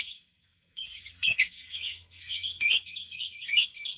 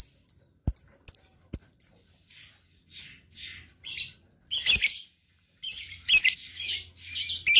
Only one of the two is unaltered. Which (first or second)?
second